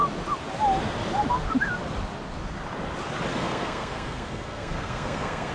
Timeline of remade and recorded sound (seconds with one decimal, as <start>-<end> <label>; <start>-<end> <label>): 0.0-3.3 recorded; 3.3-5.5 remade